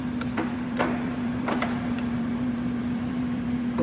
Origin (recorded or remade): remade